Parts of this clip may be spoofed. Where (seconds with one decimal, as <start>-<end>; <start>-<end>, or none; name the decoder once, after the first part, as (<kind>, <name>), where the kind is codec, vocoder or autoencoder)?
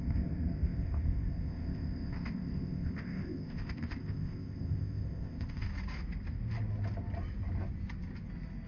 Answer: 0.0-5.7 (codec, ZipCodec)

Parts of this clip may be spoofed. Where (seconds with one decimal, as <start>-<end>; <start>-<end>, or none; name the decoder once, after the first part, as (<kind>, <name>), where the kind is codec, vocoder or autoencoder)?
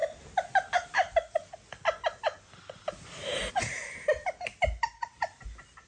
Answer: none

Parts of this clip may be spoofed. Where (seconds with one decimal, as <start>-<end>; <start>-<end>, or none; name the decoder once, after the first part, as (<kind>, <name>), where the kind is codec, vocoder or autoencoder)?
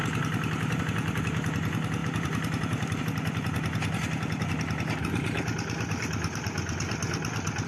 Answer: 2.0-3.0 (vocoder, BigVGAN v2)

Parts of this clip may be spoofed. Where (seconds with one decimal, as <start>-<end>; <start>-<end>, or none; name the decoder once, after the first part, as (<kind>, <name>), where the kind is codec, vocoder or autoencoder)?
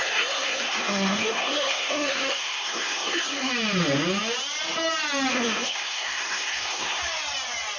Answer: 0.0-3.5 (codec, SNAC); 5.3-7.0